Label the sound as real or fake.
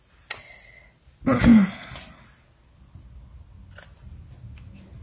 real